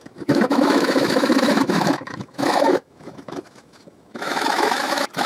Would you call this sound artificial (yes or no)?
yes